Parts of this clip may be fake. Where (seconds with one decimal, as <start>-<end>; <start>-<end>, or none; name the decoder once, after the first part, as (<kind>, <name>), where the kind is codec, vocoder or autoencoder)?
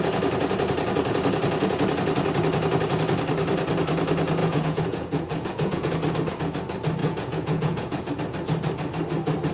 4.4-5.9 (vocoder, Vocos); 7.0-8.1